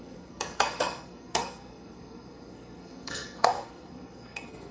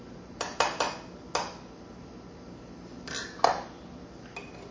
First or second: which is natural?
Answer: second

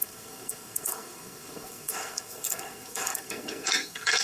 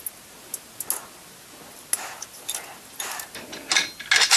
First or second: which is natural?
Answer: second